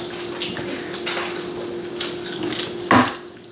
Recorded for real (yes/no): yes